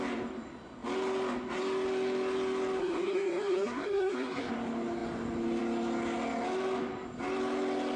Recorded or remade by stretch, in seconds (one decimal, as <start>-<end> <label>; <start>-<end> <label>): 0.0-2.8 recorded; 2.8-4.5 remade; 4.5-8.0 recorded

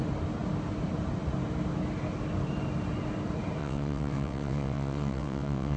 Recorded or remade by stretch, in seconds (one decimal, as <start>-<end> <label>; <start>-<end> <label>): 0.0-3.6 recorded; 3.6-5.8 remade

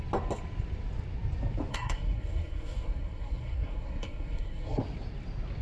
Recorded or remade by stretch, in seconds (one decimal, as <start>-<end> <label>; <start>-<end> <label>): 0.0-1.7 recorded; 1.7-4.8 remade; 4.8-5.6 recorded

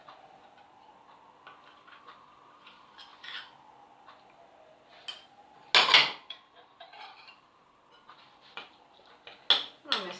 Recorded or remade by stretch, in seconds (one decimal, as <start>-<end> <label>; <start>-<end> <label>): 0.0-6.0 recorded; 6.0-9.1 remade; 9.1-10.2 recorded

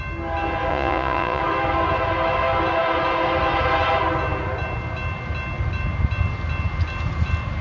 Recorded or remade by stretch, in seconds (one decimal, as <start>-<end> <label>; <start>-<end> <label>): 0.0-0.7 recorded; 0.7-1.4 remade; 1.4-7.6 recorded

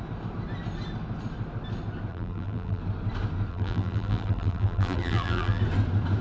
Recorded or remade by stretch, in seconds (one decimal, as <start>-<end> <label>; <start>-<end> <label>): 0.0-2.1 recorded; 2.1-2.8 remade; 2.8-3.5 recorded; 3.5-5.6 remade; 5.6-6.2 recorded